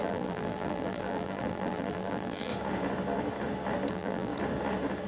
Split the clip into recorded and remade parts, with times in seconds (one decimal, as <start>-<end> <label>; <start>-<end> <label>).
0.0-2.5 remade; 2.5-3.9 recorded; 3.9-4.3 remade; 4.3-5.1 recorded